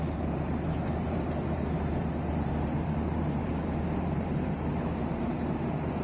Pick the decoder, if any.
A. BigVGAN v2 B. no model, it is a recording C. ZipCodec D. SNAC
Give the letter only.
A